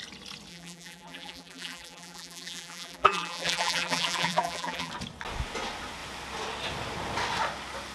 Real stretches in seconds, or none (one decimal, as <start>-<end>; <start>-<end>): 0.0-0.5; 4.9-7.9